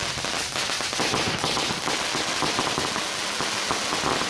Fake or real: real